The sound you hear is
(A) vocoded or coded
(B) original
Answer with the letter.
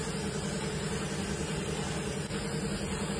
B